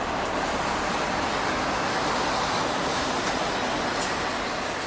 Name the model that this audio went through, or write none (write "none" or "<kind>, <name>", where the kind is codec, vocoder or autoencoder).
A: none